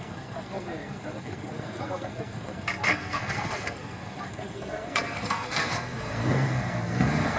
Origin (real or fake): fake